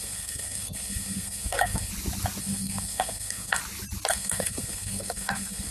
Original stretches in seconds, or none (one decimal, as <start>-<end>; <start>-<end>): 1.9-2.4; 3.6-4.1